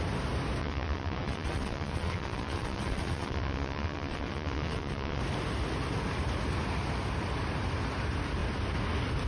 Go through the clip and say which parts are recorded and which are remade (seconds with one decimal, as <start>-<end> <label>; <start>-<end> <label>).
0.0-0.6 recorded; 0.6-5.2 remade; 5.2-9.3 recorded